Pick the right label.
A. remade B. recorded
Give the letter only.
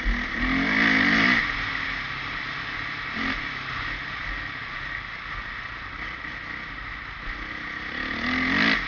B